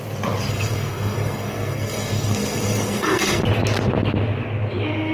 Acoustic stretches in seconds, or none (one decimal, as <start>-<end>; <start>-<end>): 0.0-0.5; 3.4-5.1

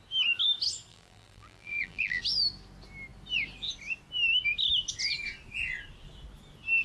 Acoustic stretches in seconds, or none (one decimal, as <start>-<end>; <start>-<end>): 0.0-0.9; 2.2-6.8

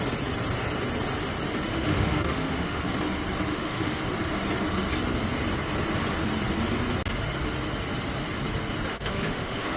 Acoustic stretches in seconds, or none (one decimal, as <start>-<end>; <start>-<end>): 0.0-1.7; 2.8-3.5; 4.0-8.9

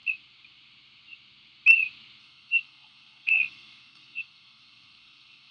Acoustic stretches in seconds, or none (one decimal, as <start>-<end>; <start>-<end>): 0.0-2.2

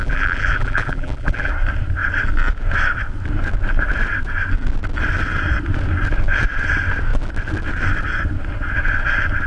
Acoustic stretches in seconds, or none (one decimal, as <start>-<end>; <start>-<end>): 1.5-9.5

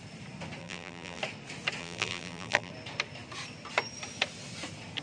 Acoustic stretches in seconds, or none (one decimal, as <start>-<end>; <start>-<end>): 0.0-0.6; 1.2-1.8; 2.7-5.0

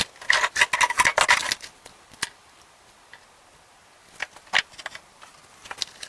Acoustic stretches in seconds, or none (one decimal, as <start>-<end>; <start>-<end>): 0.0-6.1